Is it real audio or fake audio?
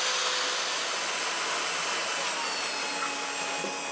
real